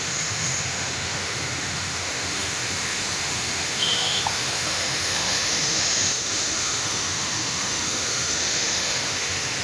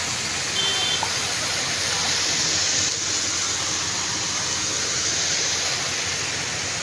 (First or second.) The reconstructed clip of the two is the first